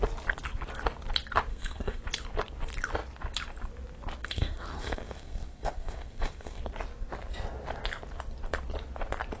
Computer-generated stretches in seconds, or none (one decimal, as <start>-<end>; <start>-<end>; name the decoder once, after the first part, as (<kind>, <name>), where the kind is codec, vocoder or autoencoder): 1.5-2.0 (codec, SNAC); 4.2-6.6